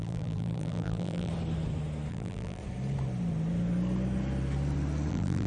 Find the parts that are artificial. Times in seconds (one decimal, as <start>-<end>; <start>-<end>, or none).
0.0-1.3; 2.1-2.6; 5.1-5.5